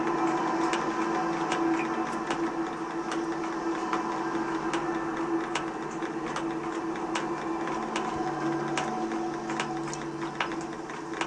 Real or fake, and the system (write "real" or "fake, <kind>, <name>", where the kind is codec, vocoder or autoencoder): real